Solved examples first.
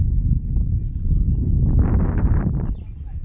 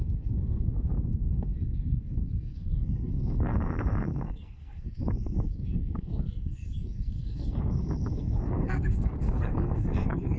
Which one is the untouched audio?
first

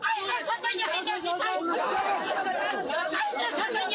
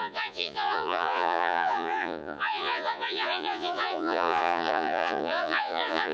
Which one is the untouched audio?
first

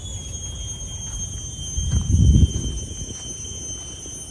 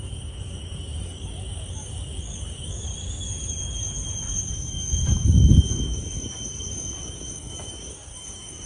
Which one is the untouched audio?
first